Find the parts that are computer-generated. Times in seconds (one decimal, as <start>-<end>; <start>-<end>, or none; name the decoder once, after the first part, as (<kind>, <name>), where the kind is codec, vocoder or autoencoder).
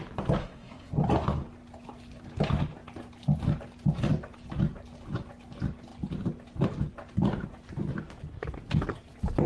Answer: 0.4-0.9 (codec, SNAC)